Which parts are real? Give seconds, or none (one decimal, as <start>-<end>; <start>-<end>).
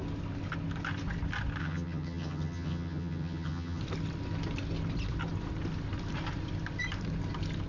0.0-1.6; 3.8-7.7